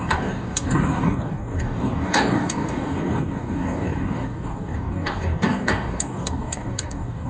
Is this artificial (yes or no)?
yes